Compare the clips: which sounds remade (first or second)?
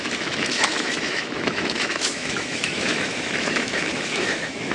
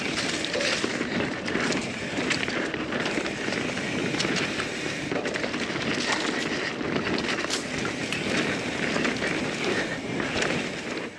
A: first